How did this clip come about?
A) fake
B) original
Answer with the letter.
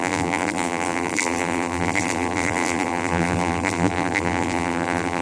A